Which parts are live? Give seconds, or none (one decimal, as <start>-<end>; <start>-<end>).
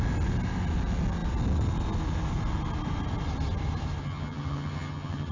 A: 0.0-4.0